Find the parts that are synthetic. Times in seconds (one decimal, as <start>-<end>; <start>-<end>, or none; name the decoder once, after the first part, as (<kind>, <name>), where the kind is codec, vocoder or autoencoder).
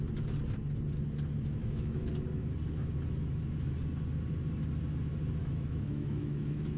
1.6-2.1 (autoencoder, DAC-VAE); 5.4-6.8